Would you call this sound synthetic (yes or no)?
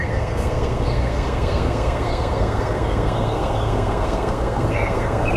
yes